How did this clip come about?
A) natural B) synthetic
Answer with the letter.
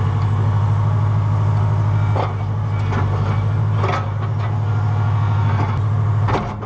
A